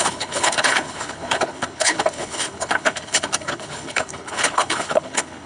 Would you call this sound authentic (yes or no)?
no